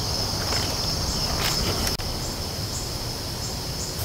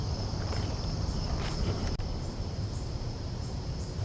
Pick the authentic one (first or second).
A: first